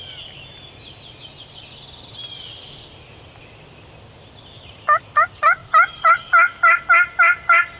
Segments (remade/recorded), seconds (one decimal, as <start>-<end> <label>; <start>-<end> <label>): 0.0-7.8 recorded